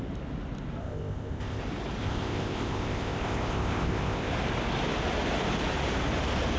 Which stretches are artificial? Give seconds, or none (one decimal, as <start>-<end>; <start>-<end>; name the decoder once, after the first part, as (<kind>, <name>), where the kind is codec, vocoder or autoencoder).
0.8-1.6 (codec, ZipCodec); 2.0-4.3